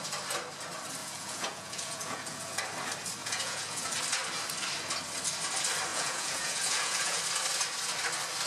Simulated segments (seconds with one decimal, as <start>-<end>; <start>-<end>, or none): 1.0-2.6; 3.2-3.9; 5.9-7.2